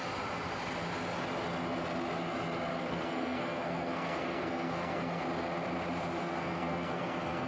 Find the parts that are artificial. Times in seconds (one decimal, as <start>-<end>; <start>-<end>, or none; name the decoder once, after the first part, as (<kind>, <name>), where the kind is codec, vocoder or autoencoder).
2.7-5.2 (codec, SNAC); 6.2-7.5